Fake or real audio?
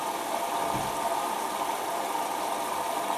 real